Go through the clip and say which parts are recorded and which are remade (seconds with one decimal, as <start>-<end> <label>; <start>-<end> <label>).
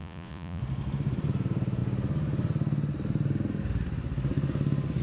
0.0-0.6 remade; 0.6-5.0 recorded